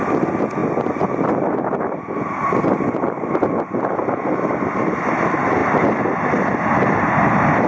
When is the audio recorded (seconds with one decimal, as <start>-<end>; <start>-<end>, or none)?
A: 0.0-7.7